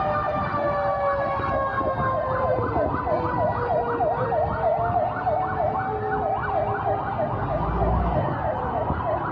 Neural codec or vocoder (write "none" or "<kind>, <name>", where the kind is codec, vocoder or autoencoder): none